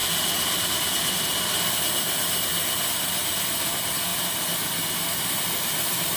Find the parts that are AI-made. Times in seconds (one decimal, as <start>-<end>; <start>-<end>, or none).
0.0-4.1; 5.3-6.2